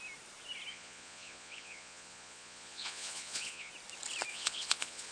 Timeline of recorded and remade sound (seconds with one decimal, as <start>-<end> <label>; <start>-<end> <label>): 0.0-0.7 recorded; 0.7-3.7 remade; 3.7-4.3 recorded; 4.3-5.1 remade